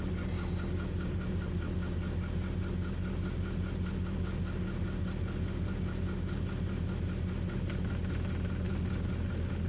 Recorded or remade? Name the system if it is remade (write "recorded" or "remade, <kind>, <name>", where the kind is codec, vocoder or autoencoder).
recorded